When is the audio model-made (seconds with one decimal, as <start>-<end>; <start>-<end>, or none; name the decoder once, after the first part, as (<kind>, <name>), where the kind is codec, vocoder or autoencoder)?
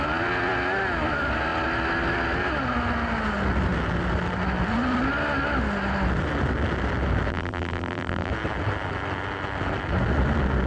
7.3-8.3 (vocoder, BigVGAN v2)